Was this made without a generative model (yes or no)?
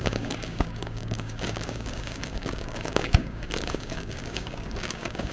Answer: no